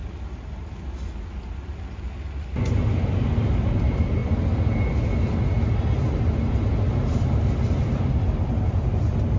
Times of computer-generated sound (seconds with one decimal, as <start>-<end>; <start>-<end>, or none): none